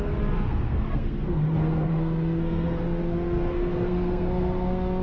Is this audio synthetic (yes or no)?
yes